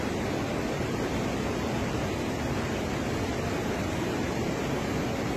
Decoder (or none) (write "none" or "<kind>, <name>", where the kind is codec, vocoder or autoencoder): vocoder, BigVGAN v2